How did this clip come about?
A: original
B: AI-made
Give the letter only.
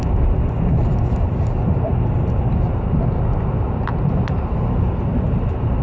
A